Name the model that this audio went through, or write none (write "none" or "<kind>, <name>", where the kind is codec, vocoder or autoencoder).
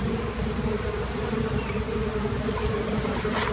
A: none